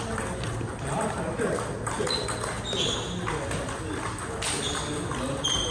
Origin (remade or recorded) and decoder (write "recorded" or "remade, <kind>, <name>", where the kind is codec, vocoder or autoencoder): recorded